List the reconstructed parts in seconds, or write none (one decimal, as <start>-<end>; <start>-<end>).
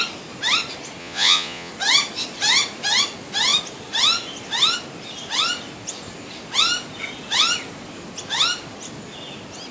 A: 1.0-1.7